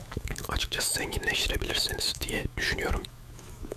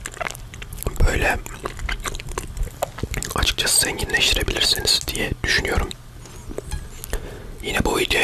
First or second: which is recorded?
second